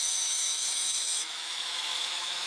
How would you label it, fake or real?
fake